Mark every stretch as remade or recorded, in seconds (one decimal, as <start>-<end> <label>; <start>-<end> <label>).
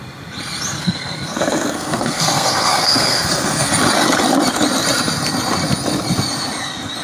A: 0.0-0.8 recorded; 0.8-3.7 remade; 3.7-7.0 recorded